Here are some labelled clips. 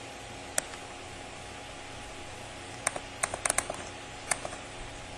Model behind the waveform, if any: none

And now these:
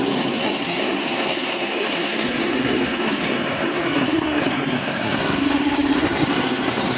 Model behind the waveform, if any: codec, SNAC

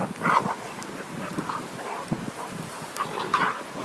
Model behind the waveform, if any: none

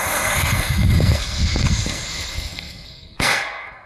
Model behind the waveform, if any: codec, SNAC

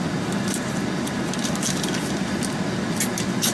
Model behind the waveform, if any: none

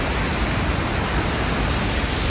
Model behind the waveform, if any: none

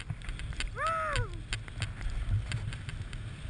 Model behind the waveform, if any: none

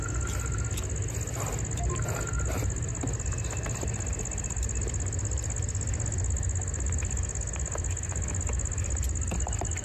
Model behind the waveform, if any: none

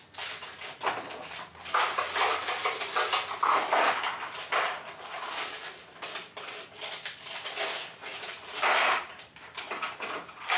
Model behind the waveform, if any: none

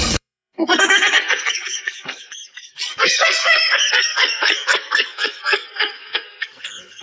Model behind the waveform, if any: codec, SNAC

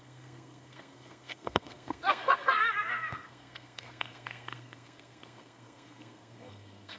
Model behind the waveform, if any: codec, SNAC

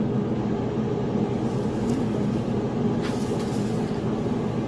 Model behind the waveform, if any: none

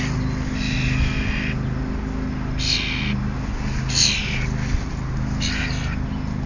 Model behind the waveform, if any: none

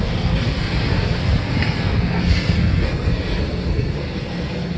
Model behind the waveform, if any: codec, SNAC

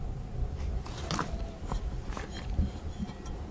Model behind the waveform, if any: none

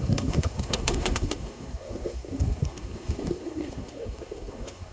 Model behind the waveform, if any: codec, SNAC